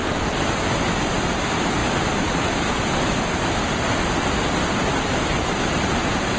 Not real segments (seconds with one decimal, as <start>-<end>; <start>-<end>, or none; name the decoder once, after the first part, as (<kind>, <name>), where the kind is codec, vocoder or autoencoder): none